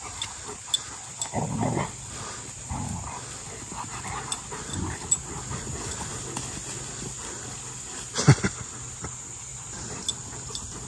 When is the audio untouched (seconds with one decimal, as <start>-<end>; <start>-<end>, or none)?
0.0-9.5; 10.1-10.9